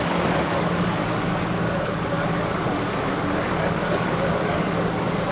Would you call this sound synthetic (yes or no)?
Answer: yes